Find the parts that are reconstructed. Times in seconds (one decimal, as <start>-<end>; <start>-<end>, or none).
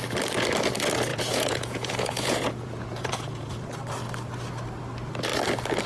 1.1-3.7